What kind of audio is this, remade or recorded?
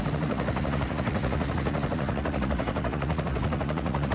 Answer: remade